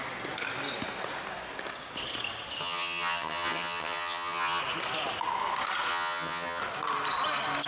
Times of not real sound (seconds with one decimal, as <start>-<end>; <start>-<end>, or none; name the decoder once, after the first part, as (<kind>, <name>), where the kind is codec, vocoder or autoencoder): 2.6-4.6 (vocoder, HiFi-GAN); 5.9-6.6